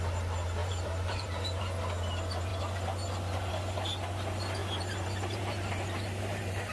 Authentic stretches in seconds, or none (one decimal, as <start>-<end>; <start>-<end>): 0.0-0.6; 1.6-4.6